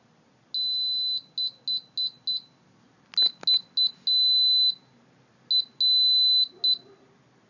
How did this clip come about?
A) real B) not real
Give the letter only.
A